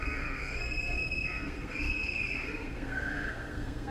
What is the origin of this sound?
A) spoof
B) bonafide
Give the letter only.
A